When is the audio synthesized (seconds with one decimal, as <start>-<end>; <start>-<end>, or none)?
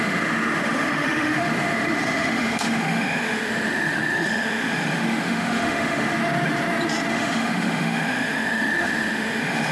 0.0-6.2; 7.1-9.7